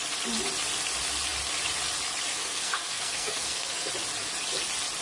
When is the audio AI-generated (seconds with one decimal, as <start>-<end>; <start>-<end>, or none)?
2.3-3.9